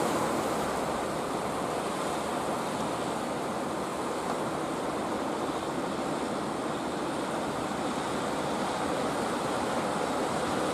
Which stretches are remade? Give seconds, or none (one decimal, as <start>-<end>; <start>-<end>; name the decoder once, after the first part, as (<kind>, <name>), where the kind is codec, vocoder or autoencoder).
none